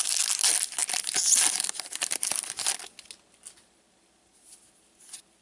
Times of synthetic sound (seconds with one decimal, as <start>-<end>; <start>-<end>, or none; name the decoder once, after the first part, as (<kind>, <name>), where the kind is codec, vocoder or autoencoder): none

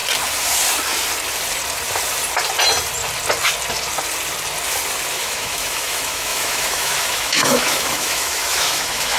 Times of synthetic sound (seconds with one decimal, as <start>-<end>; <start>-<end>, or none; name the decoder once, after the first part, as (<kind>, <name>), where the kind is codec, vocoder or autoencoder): 5.1-9.2 (autoencoder, DAC-VAE)

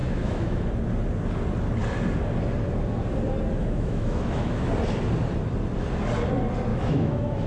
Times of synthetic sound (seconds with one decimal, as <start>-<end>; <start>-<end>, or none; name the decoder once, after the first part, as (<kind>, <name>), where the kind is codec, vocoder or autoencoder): 0.0-0.7 (autoencoder, DAC-VAE); 3.6-4.7; 6.7-7.5

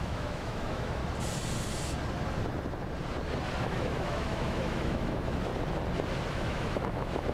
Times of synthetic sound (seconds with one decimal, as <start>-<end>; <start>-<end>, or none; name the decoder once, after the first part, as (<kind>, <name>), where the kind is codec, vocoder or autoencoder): 0.0-1.0 (autoencoder, DAC-VAE); 3.6-5.5; 6.3-7.3

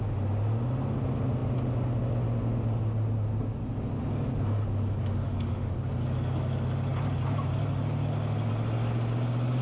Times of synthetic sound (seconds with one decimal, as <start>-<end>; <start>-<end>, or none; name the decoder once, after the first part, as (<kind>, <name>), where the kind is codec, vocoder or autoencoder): 5.2-5.7 (autoencoder, DAC-VAE)